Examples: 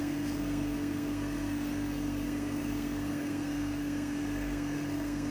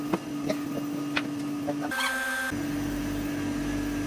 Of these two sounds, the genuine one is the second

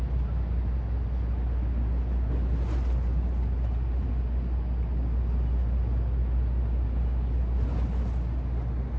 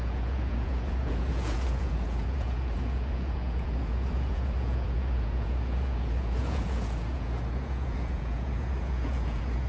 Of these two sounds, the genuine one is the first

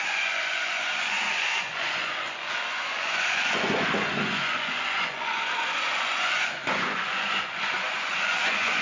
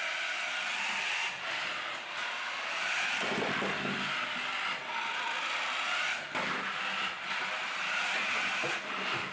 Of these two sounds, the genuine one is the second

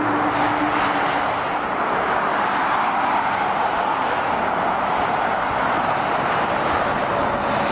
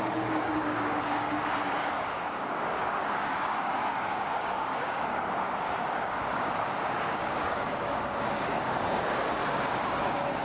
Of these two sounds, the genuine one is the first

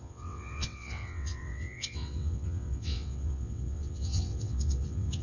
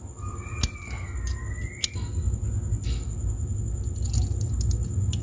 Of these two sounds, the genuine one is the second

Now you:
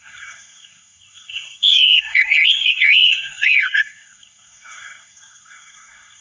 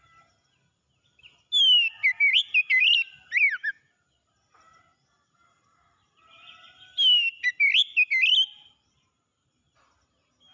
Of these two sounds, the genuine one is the second